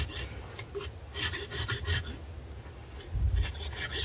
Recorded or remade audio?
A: recorded